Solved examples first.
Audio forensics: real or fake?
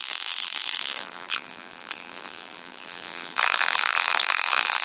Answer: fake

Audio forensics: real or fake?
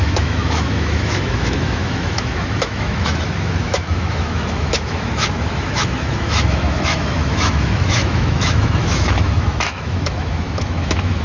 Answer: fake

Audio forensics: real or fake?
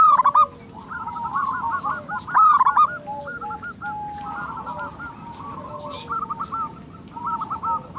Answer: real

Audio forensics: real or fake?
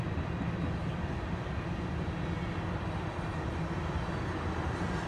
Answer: real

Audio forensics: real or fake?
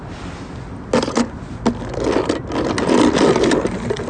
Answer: real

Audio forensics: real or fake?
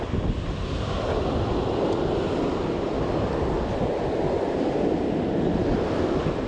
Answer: real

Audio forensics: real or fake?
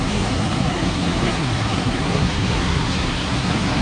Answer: fake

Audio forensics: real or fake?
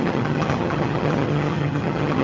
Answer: fake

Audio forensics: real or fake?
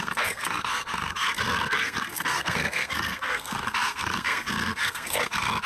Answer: fake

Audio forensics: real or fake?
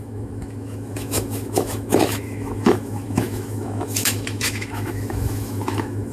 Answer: fake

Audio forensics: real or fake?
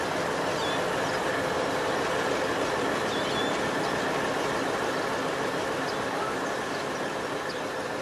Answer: real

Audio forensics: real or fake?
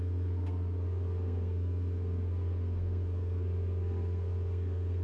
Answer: fake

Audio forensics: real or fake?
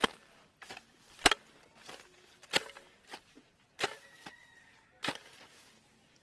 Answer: real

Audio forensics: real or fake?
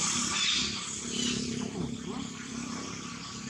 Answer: fake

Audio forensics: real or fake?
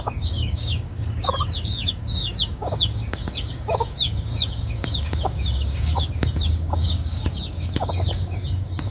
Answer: fake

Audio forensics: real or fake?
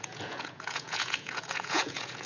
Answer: fake